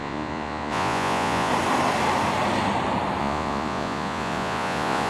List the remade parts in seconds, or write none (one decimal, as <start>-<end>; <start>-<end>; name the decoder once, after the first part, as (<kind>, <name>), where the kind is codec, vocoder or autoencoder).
0.0-1.5 (vocoder, Vocos); 3.2-5.1